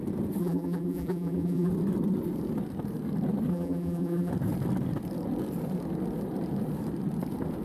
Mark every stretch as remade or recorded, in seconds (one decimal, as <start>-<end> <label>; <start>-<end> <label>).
0.0-0.4 recorded; 0.4-1.7 remade; 1.7-3.5 recorded; 3.5-4.3 remade; 4.3-7.6 recorded